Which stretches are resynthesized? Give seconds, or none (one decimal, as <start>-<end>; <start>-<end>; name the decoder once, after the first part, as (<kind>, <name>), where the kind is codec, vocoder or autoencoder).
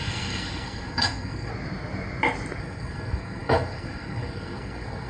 0.0-1.5 (codec, SNAC); 2.6-5.1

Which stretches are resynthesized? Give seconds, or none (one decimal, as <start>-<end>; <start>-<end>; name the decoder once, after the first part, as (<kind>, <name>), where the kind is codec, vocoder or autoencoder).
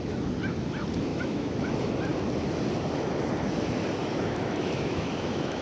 1.1-1.7 (autoencoder, DAC-VAE); 4.0-5.6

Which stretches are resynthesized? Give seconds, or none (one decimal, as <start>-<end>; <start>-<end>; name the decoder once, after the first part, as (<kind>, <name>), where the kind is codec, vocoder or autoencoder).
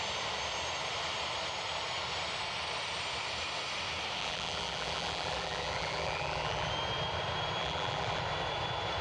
4.2-6.7 (vocoder, BigVGAN v2); 7.6-8.2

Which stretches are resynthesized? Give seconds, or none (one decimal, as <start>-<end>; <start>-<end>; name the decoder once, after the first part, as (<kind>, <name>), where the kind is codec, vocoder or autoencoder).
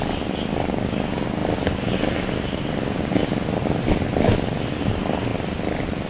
none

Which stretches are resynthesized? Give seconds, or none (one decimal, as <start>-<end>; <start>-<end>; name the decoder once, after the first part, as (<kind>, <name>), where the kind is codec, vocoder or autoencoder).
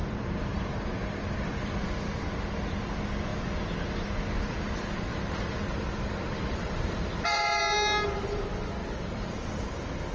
0.0-1.6 (vocoder, BigVGAN v2); 5.1-7.6; 8.8-9.3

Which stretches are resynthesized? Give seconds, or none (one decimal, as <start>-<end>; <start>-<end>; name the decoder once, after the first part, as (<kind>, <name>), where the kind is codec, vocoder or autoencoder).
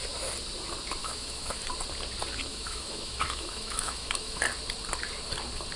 1.0-1.6 (autoencoder, DAC-VAE); 2.5-4.4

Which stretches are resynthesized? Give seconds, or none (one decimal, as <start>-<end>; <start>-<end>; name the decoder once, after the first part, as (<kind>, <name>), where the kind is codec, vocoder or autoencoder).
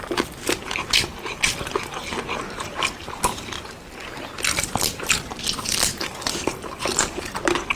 4.0-4.7 (vocoder, BigVGAN v2)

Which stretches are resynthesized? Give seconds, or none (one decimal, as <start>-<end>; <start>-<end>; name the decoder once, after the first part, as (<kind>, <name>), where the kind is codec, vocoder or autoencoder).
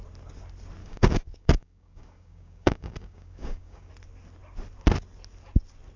0.8-3.9 (codec, DAC)